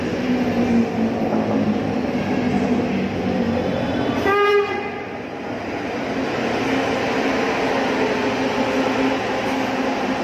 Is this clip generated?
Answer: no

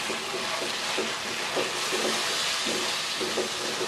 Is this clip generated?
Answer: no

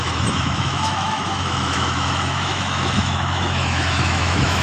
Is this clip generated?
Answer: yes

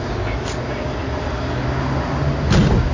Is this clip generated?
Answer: no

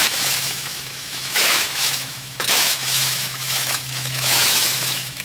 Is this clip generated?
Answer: yes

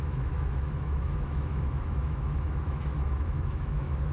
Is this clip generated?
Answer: yes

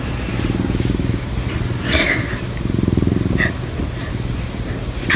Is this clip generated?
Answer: no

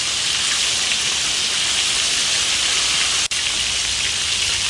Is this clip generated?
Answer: no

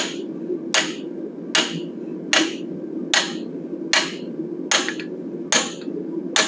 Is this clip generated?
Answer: no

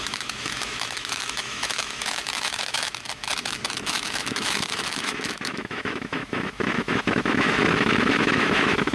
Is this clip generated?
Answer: yes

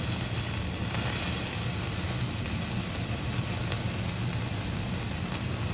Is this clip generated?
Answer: no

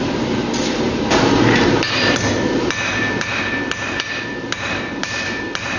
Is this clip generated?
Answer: no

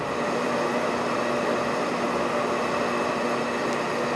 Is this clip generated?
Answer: no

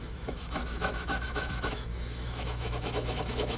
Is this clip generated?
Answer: yes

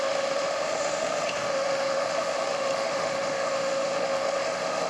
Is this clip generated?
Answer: yes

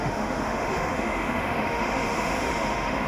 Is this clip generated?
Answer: yes